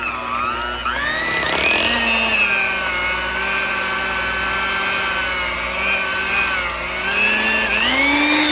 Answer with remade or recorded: recorded